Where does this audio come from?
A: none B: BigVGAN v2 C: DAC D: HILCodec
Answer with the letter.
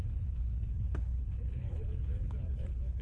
D